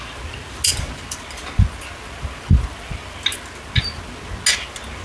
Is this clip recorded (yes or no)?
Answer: yes